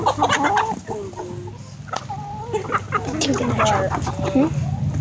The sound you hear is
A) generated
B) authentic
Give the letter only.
B